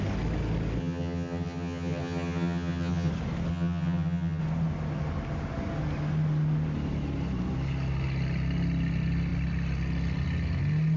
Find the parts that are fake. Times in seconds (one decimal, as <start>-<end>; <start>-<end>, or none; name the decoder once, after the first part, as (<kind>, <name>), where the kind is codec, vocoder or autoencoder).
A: 0.8-3.1 (vocoder, HiFi-GAN); 3.5-4.4